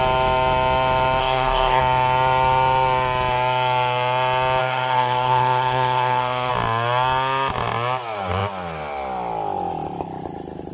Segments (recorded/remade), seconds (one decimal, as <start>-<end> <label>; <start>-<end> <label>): 0.0-1.2 recorded; 1.2-1.8 remade; 1.8-4.6 recorded; 4.6-6.5 remade; 6.5-10.7 recorded